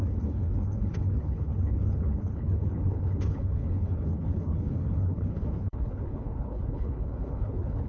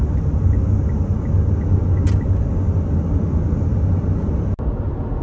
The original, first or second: second